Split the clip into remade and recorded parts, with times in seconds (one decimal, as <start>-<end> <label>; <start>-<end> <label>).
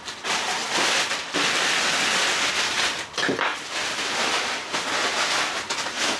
0.0-6.2 recorded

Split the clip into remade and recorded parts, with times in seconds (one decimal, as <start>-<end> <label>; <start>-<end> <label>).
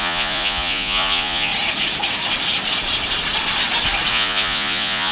0.0-1.5 remade; 1.5-4.1 recorded; 4.1-5.1 remade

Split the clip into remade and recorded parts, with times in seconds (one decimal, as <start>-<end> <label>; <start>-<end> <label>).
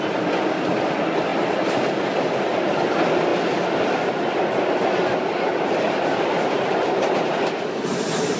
0.0-8.4 recorded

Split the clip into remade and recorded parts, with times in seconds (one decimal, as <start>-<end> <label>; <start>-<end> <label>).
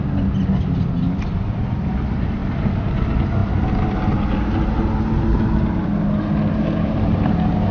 0.0-7.7 recorded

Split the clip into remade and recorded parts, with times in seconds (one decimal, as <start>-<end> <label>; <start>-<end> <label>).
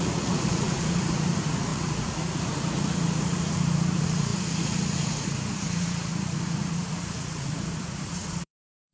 0.0-8.9 remade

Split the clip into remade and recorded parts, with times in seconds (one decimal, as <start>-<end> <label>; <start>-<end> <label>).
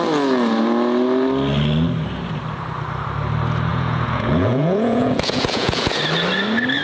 0.0-3.7 recorded; 3.7-6.0 remade; 6.0-6.8 recorded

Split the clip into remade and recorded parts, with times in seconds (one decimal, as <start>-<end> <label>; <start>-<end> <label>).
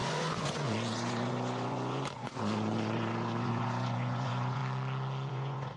0.0-4.6 remade; 4.6-5.3 recorded; 5.3-5.8 remade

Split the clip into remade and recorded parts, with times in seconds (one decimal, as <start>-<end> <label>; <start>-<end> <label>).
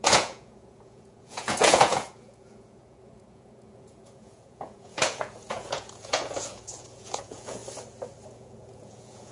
0.0-7.6 remade; 7.6-8.3 recorded; 8.3-9.3 remade